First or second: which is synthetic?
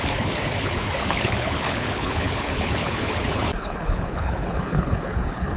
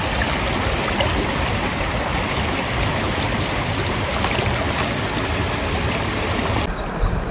first